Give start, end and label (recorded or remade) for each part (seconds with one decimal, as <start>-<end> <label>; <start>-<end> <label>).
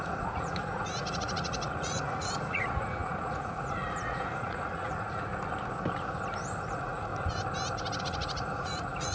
0.0-5.3 remade; 5.3-6.6 recorded; 6.6-7.1 remade; 7.1-8.0 recorded; 8.0-9.1 remade